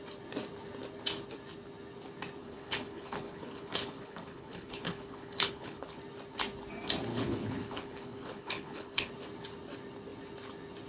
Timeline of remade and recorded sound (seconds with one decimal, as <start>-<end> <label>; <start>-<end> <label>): 0.0-2.4 recorded; 2.4-6.0 remade; 6.0-7.1 recorded; 7.1-9.1 remade; 9.1-10.9 recorded